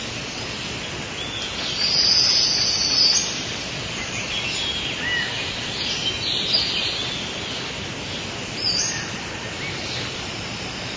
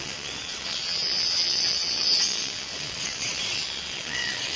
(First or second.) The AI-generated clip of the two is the second